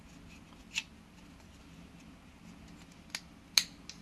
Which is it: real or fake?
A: real